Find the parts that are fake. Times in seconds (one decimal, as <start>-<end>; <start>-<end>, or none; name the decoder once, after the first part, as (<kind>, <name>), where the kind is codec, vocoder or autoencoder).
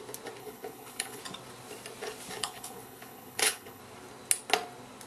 0.4-1.2 (codec, HILCodec); 2.4-3.8